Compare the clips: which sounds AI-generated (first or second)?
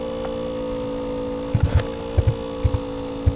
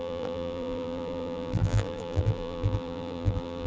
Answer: second